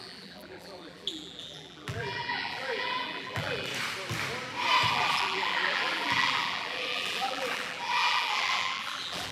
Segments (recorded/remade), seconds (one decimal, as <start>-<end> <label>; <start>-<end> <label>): 0.0-3.7 remade; 3.7-4.9 recorded; 4.9-9.3 remade

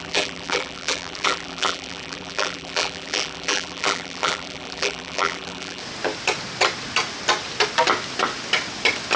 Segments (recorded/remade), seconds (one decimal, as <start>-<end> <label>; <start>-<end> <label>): 0.0-5.8 remade; 5.8-9.2 recorded

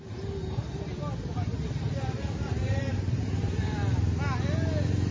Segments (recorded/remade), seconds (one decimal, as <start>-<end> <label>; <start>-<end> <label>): 0.0-0.4 recorded; 0.4-1.0 remade; 1.0-1.5 recorded; 1.5-3.6 remade; 3.6-5.1 recorded

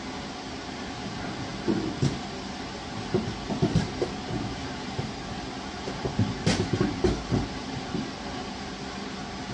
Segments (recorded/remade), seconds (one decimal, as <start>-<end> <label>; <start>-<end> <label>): 0.0-9.5 recorded

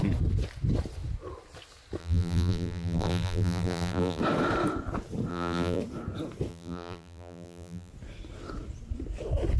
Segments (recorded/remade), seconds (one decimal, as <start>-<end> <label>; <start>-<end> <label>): 0.0-2.0 recorded; 2.0-4.2 remade; 4.2-5.3 recorded; 5.3-5.8 remade; 5.8-6.5 recorded; 6.5-7.9 remade; 7.9-9.6 recorded